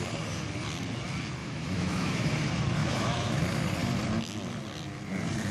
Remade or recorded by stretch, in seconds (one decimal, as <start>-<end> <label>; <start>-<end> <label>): 0.0-1.4 recorded; 1.4-2.3 remade; 2.3-2.8 recorded; 2.8-3.4 remade; 3.4-5.5 recorded